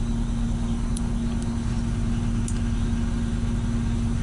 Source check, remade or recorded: recorded